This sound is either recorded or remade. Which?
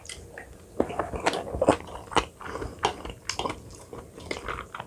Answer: recorded